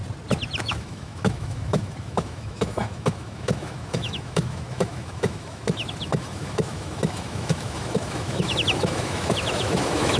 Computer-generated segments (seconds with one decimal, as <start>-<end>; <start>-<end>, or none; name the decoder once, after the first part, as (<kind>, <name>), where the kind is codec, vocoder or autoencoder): 0.6-10.2 (autoencoder, DAC-VAE)